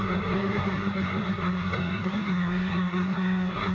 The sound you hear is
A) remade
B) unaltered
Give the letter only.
A